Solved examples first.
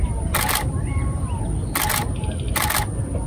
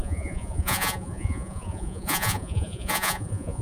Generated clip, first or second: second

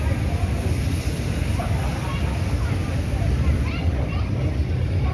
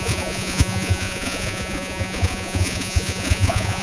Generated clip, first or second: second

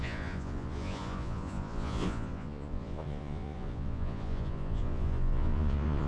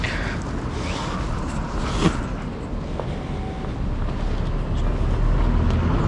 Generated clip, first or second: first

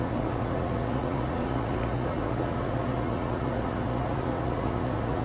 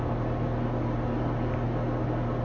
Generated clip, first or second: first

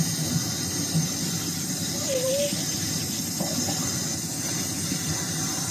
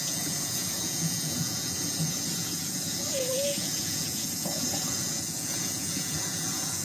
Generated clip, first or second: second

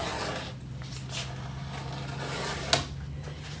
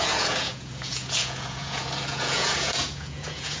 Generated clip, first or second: second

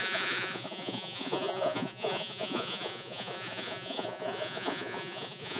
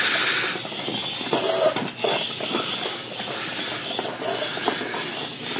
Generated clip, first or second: first